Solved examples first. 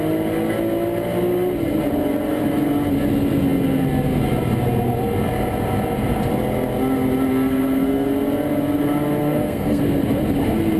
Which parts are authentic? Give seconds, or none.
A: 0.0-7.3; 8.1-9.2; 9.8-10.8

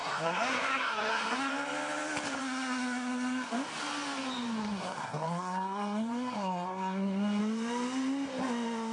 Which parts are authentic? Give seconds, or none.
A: 1.5-2.4; 3.5-4.6; 7.4-8.9